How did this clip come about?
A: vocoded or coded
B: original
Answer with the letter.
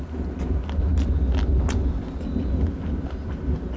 B